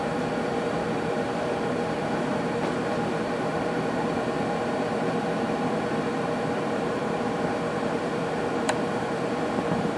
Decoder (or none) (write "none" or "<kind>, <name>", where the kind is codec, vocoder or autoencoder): vocoder, BigVGAN v2